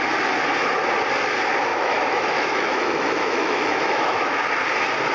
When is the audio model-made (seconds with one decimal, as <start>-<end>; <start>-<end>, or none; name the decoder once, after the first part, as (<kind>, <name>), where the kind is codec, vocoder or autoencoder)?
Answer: 1.7-4.4 (autoencoder, DAC-VAE)